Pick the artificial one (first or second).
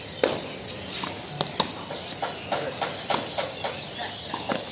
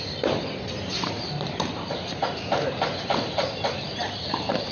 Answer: second